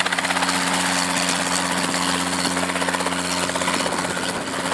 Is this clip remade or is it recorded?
recorded